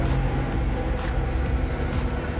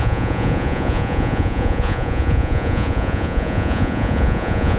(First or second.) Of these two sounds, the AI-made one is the second